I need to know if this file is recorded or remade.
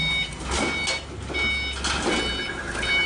recorded